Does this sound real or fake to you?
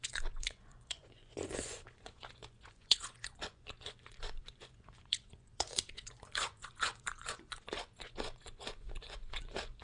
fake